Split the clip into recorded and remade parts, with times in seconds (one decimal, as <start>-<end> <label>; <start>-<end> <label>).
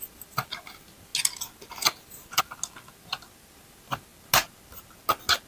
0.0-5.5 recorded